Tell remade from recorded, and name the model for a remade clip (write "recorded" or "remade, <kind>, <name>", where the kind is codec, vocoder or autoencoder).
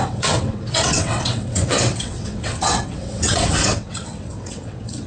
remade, vocoder, WaveNeXt